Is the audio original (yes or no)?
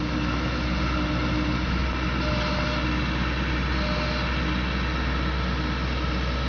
yes